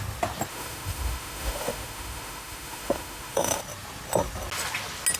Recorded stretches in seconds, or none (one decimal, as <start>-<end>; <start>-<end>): 0.0-0.5; 3.6-5.2